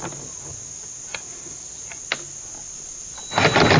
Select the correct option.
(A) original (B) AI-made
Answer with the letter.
A